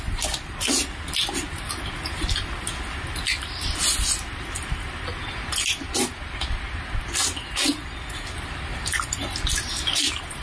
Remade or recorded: recorded